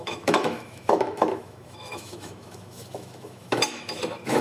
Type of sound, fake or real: fake